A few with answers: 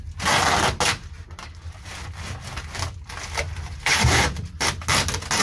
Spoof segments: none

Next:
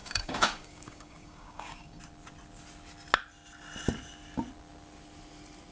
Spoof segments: 0.0-2.0